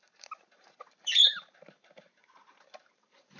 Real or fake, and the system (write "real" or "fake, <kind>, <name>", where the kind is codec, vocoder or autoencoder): fake, vocoder, BigVGAN v2